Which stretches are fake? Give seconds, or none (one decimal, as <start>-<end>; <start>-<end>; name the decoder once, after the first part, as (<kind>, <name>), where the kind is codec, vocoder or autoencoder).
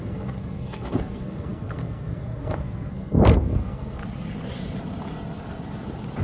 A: 0.0-4.0 (codec, SNAC)